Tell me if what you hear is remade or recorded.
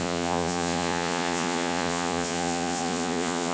remade